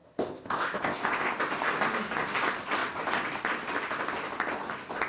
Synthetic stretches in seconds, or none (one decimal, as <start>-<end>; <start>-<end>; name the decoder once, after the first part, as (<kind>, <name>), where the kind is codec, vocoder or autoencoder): 0.0-1.3 (codec, ZipCodec)